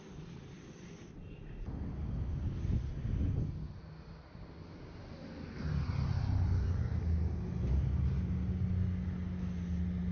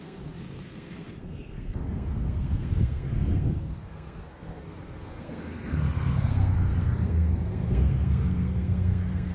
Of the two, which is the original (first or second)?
first